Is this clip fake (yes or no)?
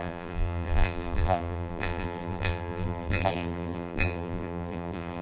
yes